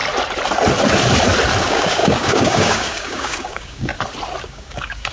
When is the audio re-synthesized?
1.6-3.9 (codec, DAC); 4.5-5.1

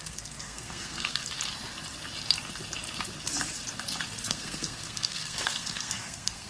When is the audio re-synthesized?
0.0-1.2 (codec, SNAC); 4.3-6.5